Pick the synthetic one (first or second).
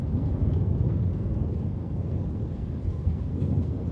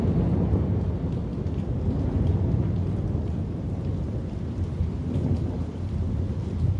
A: first